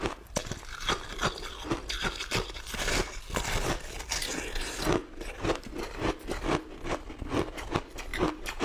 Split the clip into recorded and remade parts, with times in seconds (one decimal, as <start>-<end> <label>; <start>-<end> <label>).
0.0-5.0 recorded; 5.0-5.6 remade; 5.6-8.1 recorded; 8.1-8.6 remade